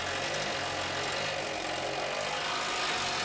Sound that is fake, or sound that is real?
real